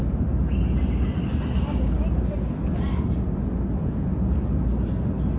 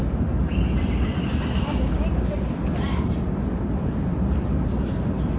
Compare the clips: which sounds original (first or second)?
first